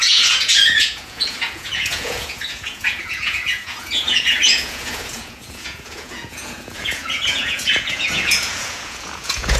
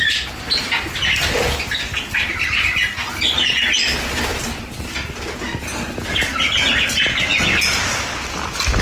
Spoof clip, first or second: first